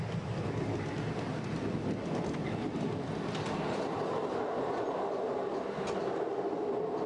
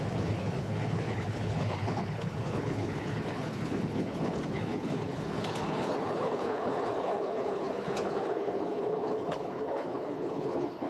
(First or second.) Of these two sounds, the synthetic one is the second